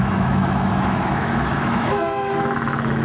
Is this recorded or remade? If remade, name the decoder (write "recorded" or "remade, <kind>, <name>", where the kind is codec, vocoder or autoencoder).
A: remade, autoencoder, DAC-VAE